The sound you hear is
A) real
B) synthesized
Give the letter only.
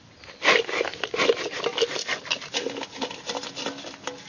A